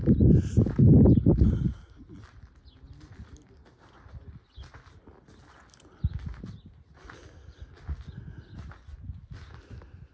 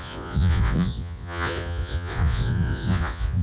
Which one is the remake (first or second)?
second